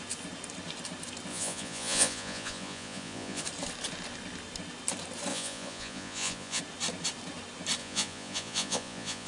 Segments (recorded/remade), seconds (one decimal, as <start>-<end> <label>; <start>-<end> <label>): 0.0-1.3 recorded; 1.3-3.4 remade; 3.4-5.3 recorded; 5.3-6.6 remade; 6.6-7.8 recorded; 7.8-9.3 remade